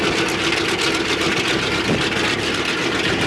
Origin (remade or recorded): recorded